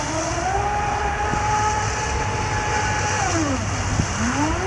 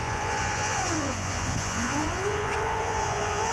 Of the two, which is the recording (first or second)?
first